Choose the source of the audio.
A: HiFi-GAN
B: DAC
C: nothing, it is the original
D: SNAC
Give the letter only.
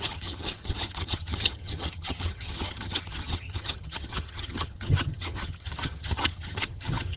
A